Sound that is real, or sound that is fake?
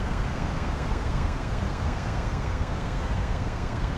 fake